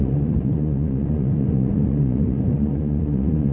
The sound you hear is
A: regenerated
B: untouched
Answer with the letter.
A